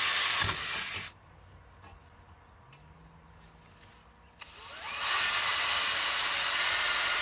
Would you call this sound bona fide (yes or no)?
yes